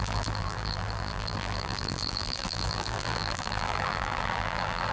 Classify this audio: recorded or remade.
remade